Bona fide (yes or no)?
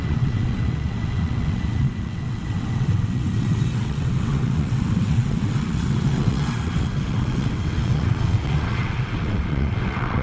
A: no